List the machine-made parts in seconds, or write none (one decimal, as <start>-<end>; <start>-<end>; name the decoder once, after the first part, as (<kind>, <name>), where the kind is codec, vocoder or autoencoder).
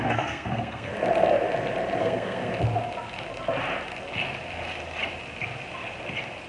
0.0-0.9 (codec, SNAC); 2.0-2.5